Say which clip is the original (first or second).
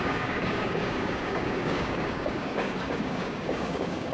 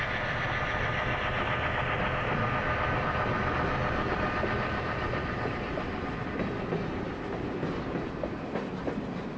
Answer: second